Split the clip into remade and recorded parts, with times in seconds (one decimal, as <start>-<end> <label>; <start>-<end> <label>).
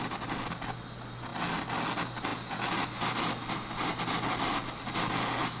0.0-5.6 recorded